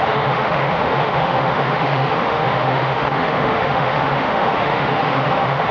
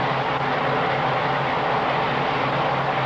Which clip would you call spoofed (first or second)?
first